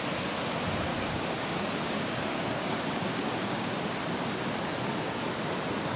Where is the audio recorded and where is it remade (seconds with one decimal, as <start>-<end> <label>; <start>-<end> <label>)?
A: 0.0-0.9 recorded; 0.9-3.8 remade; 3.8-6.0 recorded